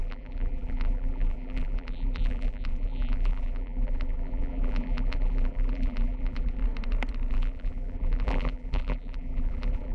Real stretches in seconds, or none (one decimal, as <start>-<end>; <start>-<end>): 6.6-7.3